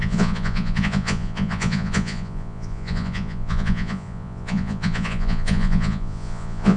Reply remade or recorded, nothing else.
remade